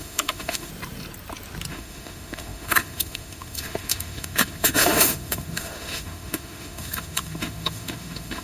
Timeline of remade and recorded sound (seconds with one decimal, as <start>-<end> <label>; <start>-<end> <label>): 0.0-0.7 remade; 0.7-1.7 recorded; 1.7-8.4 remade